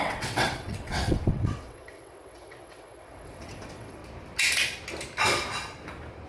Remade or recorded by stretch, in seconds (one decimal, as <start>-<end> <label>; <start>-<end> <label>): 0.0-4.0 remade; 4.0-6.3 recorded